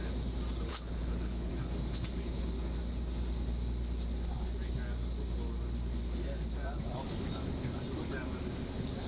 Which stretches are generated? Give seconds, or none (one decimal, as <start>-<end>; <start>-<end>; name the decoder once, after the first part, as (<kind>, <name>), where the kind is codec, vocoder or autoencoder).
0.7-1.5 (codec, HILCodec)